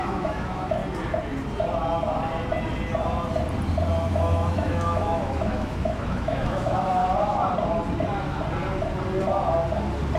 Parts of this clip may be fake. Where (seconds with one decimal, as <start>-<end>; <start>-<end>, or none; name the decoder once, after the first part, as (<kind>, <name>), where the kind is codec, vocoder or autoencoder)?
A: 0.0-0.8 (autoencoder, DAC-VAE); 4.1-7.0